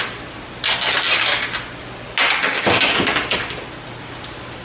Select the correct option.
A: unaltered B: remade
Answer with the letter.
A